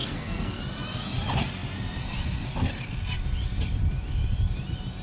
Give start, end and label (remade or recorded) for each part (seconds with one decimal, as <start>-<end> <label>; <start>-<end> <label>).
0.0-0.6 remade; 0.6-5.0 recorded